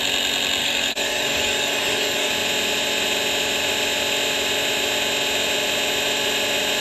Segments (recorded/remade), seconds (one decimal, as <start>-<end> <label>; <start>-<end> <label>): 0.0-0.6 recorded; 0.6-2.3 remade; 2.3-6.8 recorded